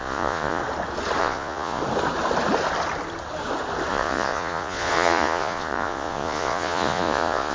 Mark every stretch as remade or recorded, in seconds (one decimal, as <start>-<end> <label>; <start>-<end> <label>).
0.0-0.6 remade; 0.6-1.2 recorded; 1.2-1.8 remade; 1.8-3.9 recorded; 3.9-7.5 remade